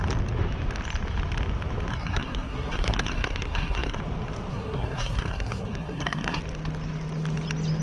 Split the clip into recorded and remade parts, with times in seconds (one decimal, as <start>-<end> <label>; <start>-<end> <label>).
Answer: 0.0-1.9 recorded; 1.9-4.0 remade; 4.0-4.5 recorded; 4.5-6.4 remade; 6.4-7.8 recorded

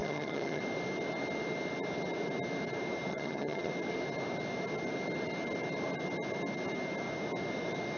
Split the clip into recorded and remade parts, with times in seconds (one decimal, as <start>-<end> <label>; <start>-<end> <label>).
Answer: 0.0-0.6 remade; 0.6-3.1 recorded; 3.1-3.7 remade; 3.7-8.0 recorded